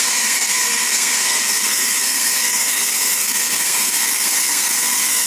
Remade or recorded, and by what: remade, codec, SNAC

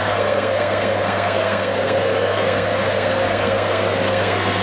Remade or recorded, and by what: remade, codec, SNAC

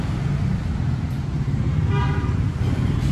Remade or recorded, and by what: remade, vocoder, BigVGAN v2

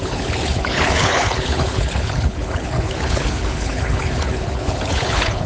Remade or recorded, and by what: remade, codec, HILCodec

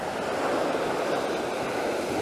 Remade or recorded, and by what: recorded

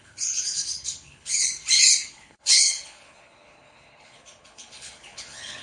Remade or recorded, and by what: remade, codec, HILCodec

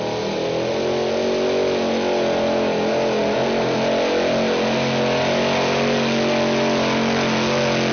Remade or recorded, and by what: recorded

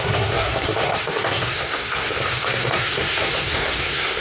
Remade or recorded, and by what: remade, codec, SNAC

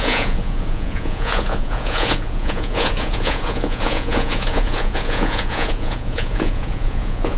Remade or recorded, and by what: remade, vocoder, Vocos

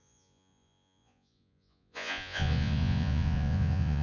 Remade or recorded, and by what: remade, vocoder, Vocos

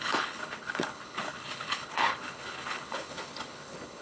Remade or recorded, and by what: remade, codec, HILCodec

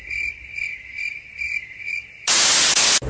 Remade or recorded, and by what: recorded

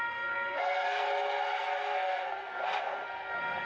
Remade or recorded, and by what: remade, codec, SNAC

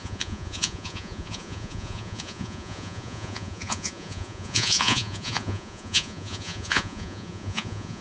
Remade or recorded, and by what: remade, vocoder, Vocos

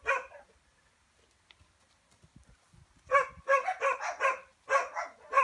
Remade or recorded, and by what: recorded